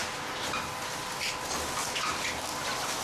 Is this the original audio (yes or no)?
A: yes